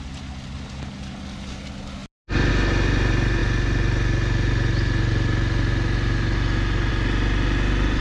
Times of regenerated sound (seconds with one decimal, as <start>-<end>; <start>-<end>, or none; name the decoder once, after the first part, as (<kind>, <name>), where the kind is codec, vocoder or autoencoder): none

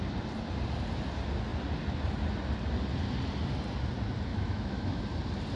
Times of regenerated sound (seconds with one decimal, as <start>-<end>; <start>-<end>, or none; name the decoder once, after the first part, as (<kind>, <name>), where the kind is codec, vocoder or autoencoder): 4.3-5.0 (autoencoder, DAC-VAE)

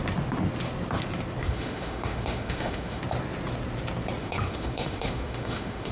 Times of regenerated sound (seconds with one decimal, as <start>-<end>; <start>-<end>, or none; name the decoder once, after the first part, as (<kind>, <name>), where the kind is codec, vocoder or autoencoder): 1.4-3.0 (autoencoder, DAC-VAE); 4.2-5.9

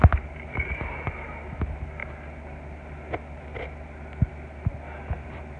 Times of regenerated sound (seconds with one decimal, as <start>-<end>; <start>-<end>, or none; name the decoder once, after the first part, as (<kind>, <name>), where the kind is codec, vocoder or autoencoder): none

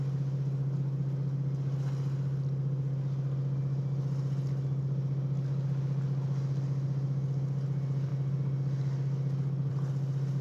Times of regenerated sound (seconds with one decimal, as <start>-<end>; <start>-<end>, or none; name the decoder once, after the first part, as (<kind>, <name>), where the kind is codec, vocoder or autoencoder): none

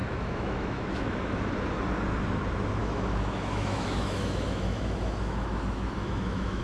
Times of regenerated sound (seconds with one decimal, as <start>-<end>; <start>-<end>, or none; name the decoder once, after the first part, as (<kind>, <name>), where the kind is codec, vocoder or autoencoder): 0.0-1.5 (autoencoder, DAC-VAE); 2.8-6.6

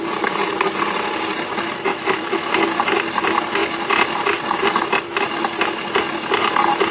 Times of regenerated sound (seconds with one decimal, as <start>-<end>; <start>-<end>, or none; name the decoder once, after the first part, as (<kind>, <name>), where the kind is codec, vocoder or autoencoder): 1.9-2.5 (autoencoder, DAC-VAE)